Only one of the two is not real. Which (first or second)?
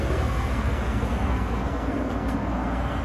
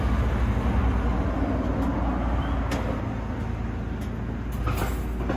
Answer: first